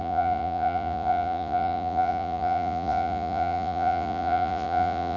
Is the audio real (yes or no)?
no